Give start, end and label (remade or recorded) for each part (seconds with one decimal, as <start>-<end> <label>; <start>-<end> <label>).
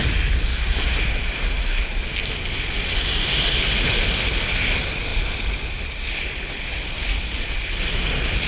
0.0-8.5 recorded